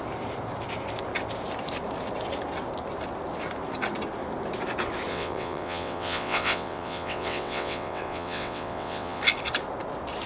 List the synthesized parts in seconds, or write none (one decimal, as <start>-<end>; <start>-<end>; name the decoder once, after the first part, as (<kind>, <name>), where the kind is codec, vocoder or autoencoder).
5.1-9.2 (vocoder, WaveNeXt)